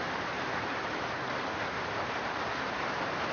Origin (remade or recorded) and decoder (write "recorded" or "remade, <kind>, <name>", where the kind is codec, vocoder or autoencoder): remade, vocoder, BigVGAN v2